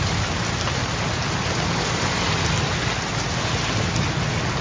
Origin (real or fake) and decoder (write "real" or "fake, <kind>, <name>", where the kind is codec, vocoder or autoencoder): real